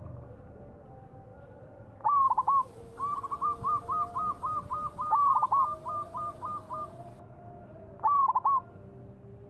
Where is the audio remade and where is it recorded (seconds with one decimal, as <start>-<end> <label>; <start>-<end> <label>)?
0.0-1.3 recorded; 1.3-2.8 remade; 2.8-9.5 recorded